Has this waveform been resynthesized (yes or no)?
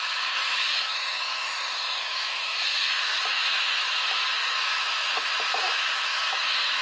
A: yes